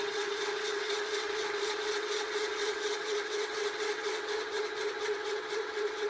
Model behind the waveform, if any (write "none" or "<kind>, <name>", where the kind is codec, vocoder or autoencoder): vocoder, WaveNeXt